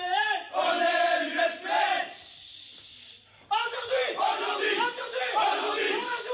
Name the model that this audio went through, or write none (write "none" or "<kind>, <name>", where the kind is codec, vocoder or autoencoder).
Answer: vocoder, BigVGAN v2